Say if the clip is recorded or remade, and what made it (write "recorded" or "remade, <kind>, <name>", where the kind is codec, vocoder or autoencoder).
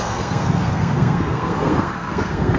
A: remade, codec, SNAC